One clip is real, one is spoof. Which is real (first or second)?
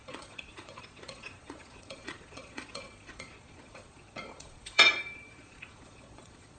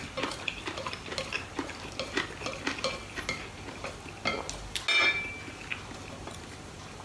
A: second